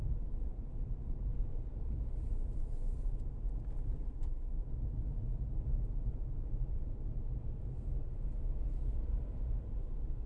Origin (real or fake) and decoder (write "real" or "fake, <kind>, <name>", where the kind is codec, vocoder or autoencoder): fake, vocoder, BigVGAN v2